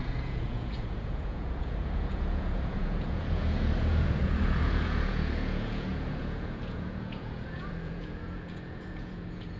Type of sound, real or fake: fake